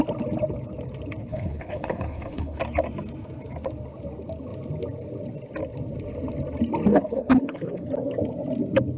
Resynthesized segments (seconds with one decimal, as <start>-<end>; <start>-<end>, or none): 1.3-2.6; 6.9-7.9